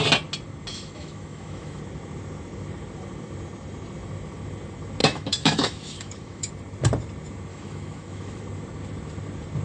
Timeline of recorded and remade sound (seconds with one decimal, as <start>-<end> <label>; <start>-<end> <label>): 0.0-0.7 recorded; 0.7-1.8 remade; 1.8-5.0 recorded; 5.0-6.5 remade; 6.5-7.5 recorded; 7.5-8.4 remade; 8.4-9.6 recorded

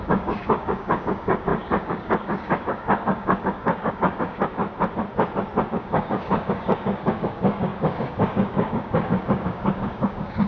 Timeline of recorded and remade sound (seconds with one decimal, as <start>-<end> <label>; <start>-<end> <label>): 0.0-4.6 remade; 4.6-5.7 recorded; 5.7-10.5 remade

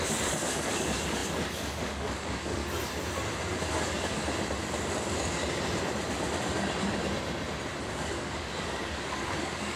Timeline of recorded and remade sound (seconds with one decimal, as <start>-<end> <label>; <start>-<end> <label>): 0.0-2.6 remade; 2.6-3.8 recorded; 3.8-4.2 remade; 4.2-7.8 recorded; 7.8-9.8 remade